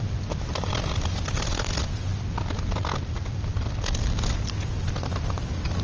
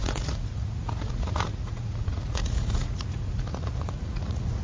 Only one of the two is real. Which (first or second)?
first